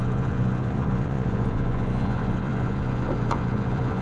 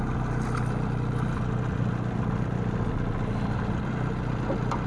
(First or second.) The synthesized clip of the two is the first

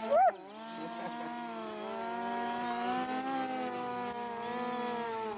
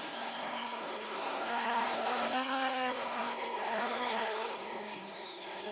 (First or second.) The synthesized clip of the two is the second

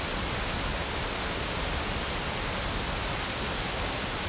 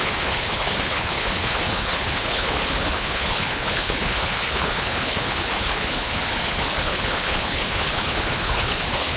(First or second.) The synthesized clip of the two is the second